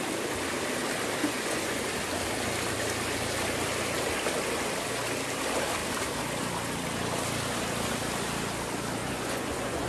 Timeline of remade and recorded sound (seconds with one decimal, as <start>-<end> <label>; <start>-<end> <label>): 0.0-1.2 recorded; 1.2-1.8 remade; 1.8-9.0 recorded; 9.0-9.9 remade

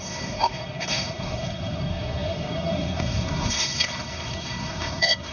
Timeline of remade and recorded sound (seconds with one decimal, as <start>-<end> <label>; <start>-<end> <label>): 0.0-5.3 remade

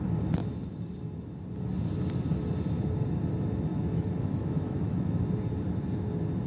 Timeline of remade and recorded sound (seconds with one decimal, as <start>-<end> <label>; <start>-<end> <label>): 0.0-3.7 recorded; 3.7-5.2 remade; 5.2-6.5 recorded

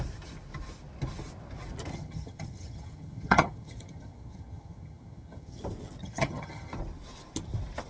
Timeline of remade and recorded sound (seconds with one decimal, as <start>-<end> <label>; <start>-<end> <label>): 0.0-1.9 recorded; 1.9-5.6 remade; 5.6-6.0 recorded; 6.0-6.8 remade; 6.8-7.9 recorded